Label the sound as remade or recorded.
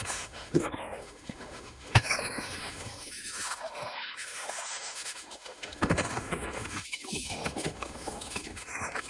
remade